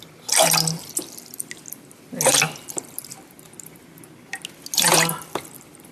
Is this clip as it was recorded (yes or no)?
yes